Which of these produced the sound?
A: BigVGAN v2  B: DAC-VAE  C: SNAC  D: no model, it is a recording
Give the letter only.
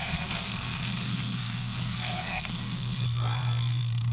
C